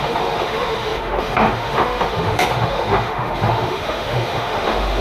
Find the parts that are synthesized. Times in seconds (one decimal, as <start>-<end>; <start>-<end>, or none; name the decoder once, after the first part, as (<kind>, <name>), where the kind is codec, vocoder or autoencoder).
0.0-5.0 (autoencoder, DAC-VAE)